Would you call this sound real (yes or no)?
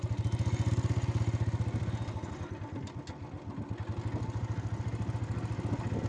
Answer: yes